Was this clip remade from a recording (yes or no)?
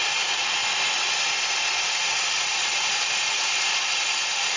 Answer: no